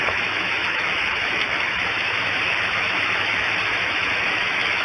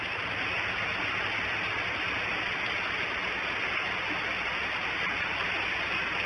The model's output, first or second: first